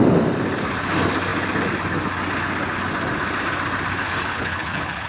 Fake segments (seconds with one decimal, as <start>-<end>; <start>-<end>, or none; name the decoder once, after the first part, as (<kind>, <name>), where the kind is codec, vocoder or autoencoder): 4.0-5.1 (codec, HILCodec)